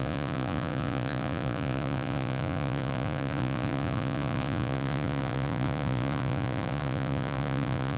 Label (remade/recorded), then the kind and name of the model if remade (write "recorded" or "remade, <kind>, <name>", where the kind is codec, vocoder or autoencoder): remade, vocoder, Vocos